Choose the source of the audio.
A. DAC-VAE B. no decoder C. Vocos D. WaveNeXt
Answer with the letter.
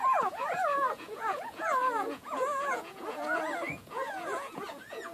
C